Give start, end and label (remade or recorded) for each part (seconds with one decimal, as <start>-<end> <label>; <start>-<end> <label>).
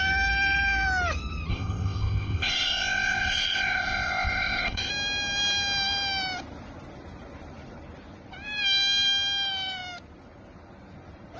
0.0-1.5 recorded; 1.5-4.9 remade; 4.9-11.4 recorded